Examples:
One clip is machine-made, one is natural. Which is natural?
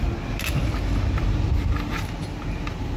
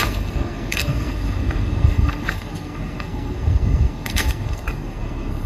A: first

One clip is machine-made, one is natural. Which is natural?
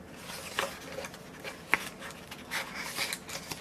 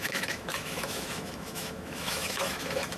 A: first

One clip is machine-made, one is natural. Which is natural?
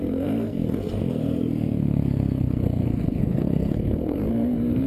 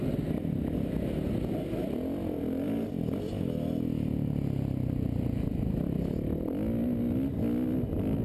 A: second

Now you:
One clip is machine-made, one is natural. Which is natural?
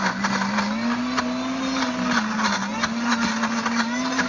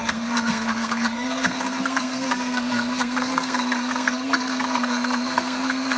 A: first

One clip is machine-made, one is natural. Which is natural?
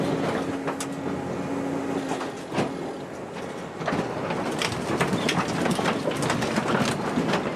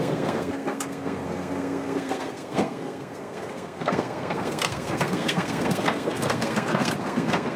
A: first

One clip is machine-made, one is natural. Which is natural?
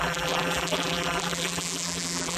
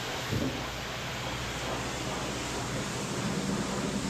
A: second